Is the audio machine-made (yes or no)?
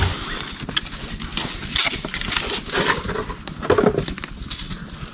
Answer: no